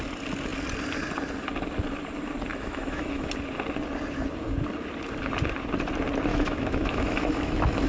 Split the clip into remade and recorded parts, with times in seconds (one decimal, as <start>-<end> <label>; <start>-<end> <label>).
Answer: 0.0-2.5 recorded; 2.5-3.3 remade; 3.3-6.3 recorded; 6.3-7.9 remade